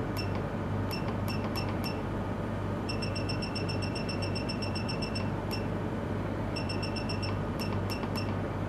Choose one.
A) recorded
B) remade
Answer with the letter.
B